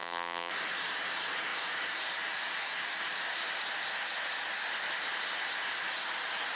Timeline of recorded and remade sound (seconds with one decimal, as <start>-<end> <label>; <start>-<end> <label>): 0.0-0.5 remade; 0.5-6.6 recorded